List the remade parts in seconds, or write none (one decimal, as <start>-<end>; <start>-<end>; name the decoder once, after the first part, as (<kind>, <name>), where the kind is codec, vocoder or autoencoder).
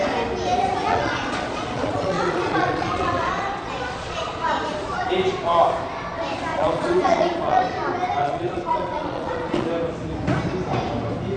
0.9-5.1 (vocoder, Vocos); 6.5-7.6; 8.2-9.7